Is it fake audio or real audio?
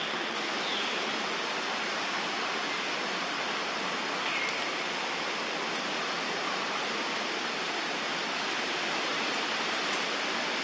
real